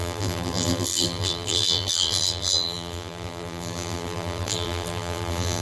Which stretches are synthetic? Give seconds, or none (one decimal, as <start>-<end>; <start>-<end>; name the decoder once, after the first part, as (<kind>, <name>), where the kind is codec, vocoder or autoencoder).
0.0-5.6 (vocoder, BigVGAN v2)